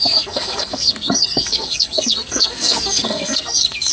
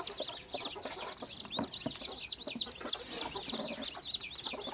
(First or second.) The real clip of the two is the second